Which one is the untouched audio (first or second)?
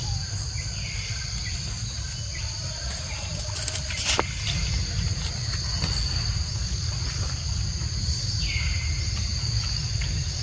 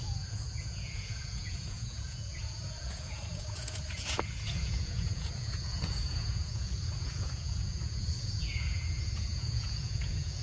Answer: first